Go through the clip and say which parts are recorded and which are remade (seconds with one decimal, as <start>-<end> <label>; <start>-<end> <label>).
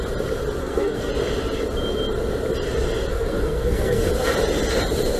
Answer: 0.0-0.6 recorded; 0.6-1.1 remade; 1.1-3.1 recorded; 3.1-4.1 remade; 4.1-5.2 recorded